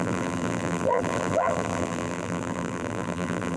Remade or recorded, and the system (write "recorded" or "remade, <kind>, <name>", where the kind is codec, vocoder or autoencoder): remade, vocoder, BigVGAN v2